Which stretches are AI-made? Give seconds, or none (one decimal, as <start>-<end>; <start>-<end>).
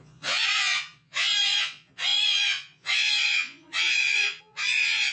0.0-5.1